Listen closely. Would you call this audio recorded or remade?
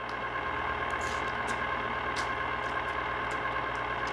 recorded